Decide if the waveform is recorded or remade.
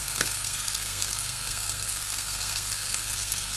remade